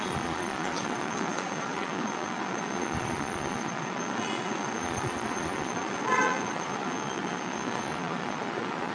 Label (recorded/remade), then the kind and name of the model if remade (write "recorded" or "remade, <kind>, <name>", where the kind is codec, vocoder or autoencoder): remade, vocoder, Vocos